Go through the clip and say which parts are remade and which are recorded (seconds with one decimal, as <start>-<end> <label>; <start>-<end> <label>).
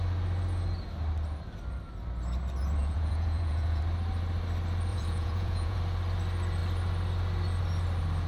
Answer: 0.0-2.8 recorded; 2.8-3.8 remade; 3.8-4.9 recorded; 4.9-5.8 remade; 5.8-8.3 recorded